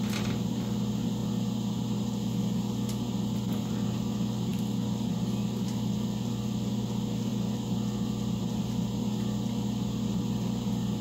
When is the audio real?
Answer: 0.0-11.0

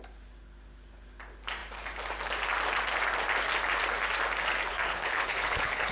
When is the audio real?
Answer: 0.0-4.7

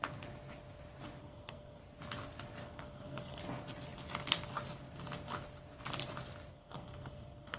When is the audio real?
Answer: 0.0-1.2; 1.8-2.6; 3.4-6.5

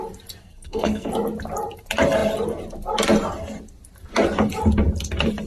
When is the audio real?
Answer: 0.0-0.4; 1.1-5.5

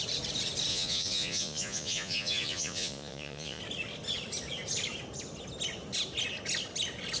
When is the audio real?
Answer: 0.0-0.7; 3.6-7.2